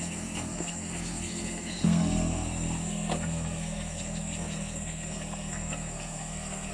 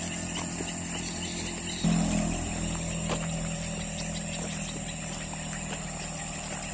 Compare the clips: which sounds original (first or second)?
second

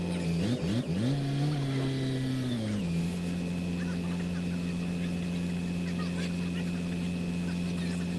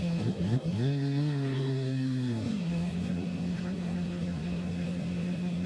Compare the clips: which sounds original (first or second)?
first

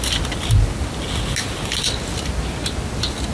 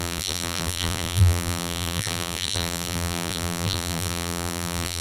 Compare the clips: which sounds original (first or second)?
first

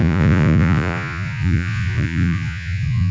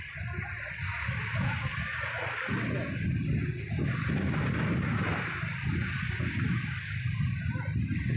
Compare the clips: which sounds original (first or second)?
second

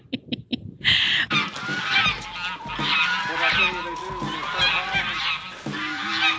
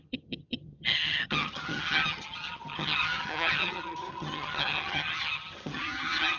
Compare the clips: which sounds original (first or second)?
first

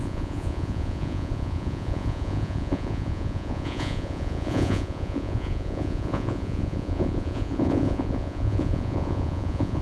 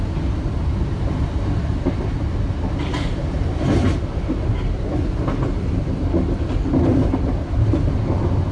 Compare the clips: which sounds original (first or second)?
second